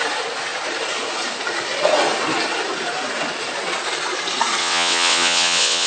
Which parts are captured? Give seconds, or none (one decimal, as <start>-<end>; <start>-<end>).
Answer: 0.0-4.6